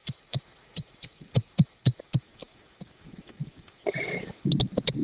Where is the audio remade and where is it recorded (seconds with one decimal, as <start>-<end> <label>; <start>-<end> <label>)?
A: 0.0-2.0 remade; 2.0-5.0 recorded